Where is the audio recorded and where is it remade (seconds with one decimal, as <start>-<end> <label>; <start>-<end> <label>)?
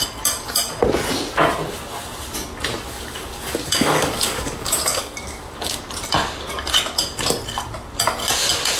0.0-2.9 recorded; 2.9-5.8 remade; 5.8-8.8 recorded